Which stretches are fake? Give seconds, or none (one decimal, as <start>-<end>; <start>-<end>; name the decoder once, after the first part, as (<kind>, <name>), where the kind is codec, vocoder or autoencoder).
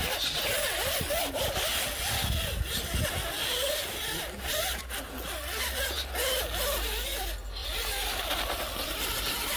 3.4-4.8 (vocoder, BigVGAN v2); 7.6-9.6